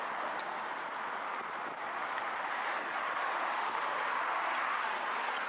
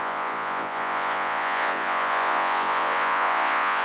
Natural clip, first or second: first